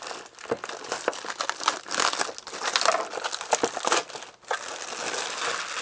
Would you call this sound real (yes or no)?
yes